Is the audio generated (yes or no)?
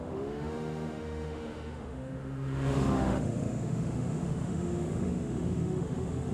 yes